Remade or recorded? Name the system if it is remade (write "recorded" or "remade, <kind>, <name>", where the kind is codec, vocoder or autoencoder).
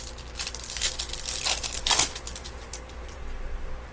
recorded